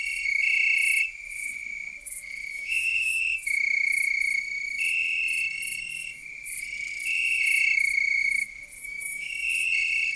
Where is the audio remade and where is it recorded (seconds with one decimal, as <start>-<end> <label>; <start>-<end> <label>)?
0.0-2.5 recorded; 2.5-3.2 remade; 3.2-8.8 recorded; 8.8-9.3 remade; 9.3-10.2 recorded